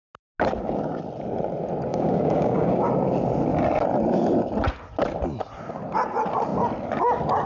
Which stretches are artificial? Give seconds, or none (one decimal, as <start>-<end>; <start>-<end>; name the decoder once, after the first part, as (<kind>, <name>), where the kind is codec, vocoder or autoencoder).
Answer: 1.9-2.9 (codec, DAC)